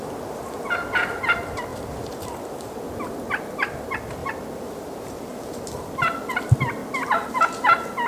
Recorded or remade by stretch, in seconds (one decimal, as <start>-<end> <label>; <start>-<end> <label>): 0.0-1.7 recorded; 1.7-2.9 remade; 2.9-4.2 recorded; 4.2-5.7 remade; 5.7-6.8 recorded; 6.8-7.3 remade; 7.3-8.1 recorded